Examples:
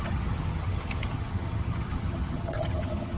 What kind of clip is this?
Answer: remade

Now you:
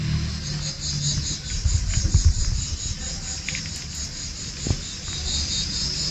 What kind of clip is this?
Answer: recorded